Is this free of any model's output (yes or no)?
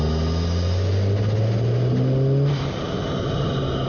yes